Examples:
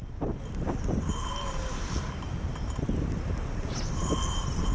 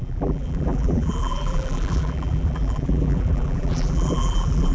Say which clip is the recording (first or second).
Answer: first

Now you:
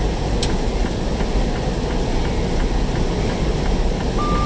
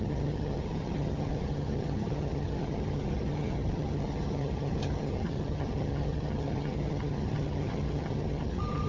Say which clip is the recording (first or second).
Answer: first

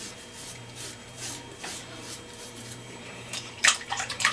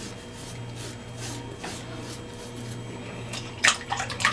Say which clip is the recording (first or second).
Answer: second